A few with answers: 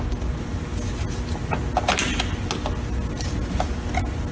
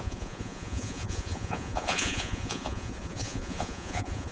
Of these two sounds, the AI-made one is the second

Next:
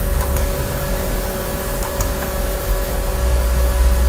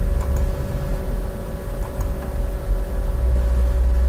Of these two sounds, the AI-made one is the first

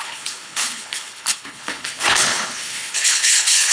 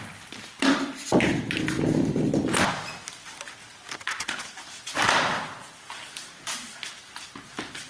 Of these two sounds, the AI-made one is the first